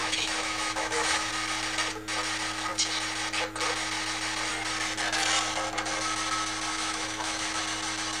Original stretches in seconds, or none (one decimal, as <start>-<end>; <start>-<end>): 1.3-6.7; 7.6-8.2